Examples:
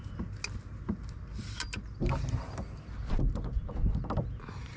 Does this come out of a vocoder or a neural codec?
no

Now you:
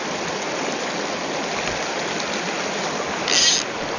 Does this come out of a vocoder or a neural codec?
no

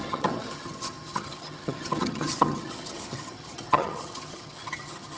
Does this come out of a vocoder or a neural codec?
yes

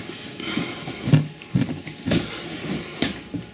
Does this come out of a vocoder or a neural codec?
no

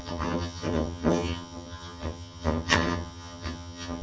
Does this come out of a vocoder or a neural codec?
yes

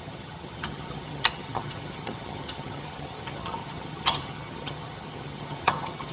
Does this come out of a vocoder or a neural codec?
yes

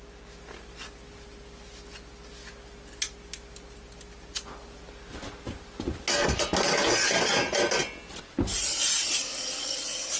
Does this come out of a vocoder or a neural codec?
no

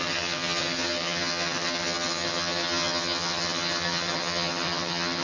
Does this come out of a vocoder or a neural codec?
yes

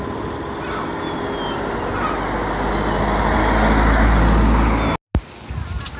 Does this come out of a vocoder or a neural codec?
no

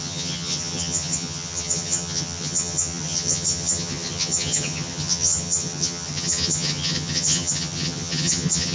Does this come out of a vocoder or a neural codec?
yes